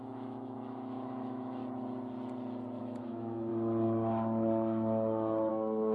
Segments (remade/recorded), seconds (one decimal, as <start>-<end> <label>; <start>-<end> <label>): 0.0-1.6 remade; 1.6-2.8 recorded; 2.8-3.5 remade; 3.5-5.5 recorded; 5.5-5.9 remade